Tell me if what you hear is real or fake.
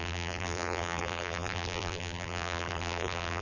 fake